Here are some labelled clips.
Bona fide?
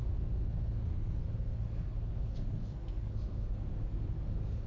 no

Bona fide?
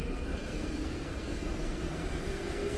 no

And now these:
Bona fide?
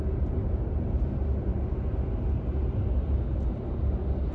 yes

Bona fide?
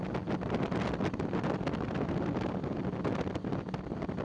yes